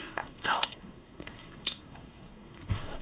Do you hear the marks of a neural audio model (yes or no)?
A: yes